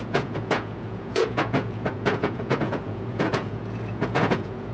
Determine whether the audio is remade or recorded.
remade